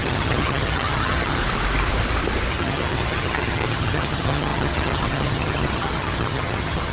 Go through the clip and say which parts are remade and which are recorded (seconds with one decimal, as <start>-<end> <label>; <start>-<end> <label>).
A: 0.0-1.4 remade; 1.4-2.5 recorded; 2.5-6.9 remade